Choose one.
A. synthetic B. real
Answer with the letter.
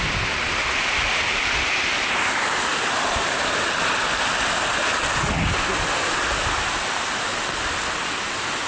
B